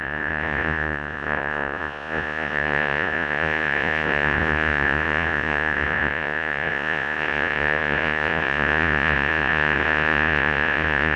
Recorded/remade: remade